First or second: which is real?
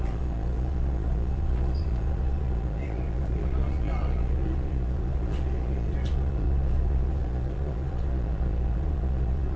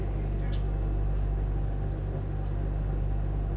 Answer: second